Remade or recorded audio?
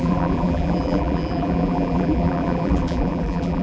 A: remade